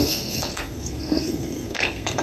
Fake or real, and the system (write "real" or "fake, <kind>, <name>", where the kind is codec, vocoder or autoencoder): fake, codec, SNAC